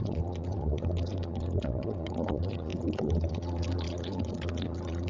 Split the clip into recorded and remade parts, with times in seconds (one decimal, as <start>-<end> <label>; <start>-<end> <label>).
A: 0.0-5.1 remade